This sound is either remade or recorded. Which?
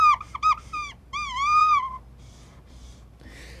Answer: remade